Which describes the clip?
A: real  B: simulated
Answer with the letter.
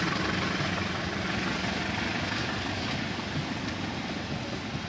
A